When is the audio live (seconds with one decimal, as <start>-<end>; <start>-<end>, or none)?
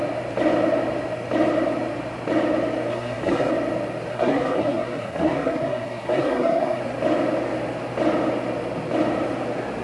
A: 0.0-2.9; 3.5-4.1; 6.8-9.8